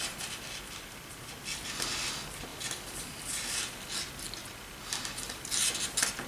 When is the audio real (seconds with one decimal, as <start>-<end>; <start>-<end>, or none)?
0.0-6.3